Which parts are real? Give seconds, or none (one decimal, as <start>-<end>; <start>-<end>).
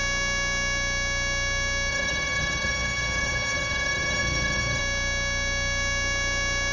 0.0-1.9; 4.8-6.7